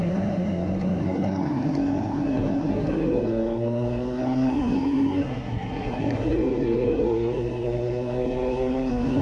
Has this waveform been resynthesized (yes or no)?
yes